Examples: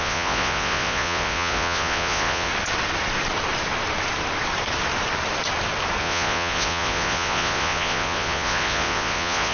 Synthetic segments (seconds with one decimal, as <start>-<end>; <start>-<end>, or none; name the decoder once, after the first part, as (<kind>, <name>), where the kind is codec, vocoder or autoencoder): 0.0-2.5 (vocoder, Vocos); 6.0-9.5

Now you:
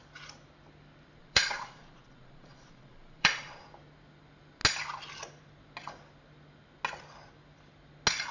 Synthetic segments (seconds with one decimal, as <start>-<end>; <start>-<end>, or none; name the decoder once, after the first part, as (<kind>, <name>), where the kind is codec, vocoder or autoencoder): 1.2-3.6 (vocoder, Vocos)

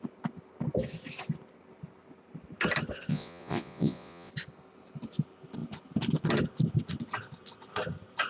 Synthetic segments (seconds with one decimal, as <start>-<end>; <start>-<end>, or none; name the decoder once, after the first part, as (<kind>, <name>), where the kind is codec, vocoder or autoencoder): 3.1-4.3 (vocoder, Vocos)

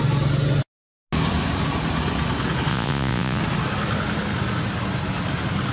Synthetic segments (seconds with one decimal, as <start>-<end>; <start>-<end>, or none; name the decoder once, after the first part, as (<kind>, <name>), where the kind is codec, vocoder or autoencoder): 2.7-3.4 (vocoder, Vocos)

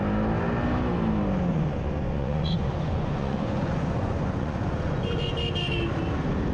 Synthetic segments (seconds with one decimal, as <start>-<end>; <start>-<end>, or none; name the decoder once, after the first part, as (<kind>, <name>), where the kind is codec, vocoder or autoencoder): 1.5-5.3 (vocoder, Vocos)

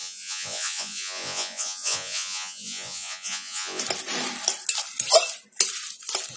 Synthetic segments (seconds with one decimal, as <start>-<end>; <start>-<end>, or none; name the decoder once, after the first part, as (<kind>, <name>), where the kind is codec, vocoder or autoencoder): 0.0-3.8 (vocoder, Vocos)

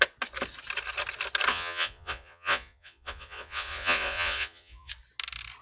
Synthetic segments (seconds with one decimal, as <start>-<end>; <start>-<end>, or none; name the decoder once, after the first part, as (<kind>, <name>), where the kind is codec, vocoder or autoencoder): 1.5-4.9 (vocoder, Vocos)